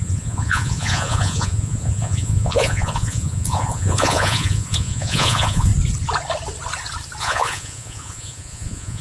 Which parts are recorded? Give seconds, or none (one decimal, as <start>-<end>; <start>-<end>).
5.7-7.2